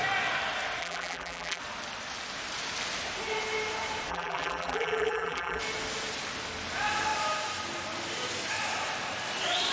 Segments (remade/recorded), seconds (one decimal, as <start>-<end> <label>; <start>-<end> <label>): 0.0-0.8 recorded; 0.8-1.6 remade; 1.6-4.1 recorded; 4.1-5.6 remade; 5.6-9.7 recorded